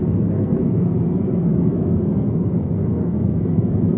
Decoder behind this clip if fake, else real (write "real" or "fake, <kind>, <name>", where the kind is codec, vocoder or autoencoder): fake, codec, SNAC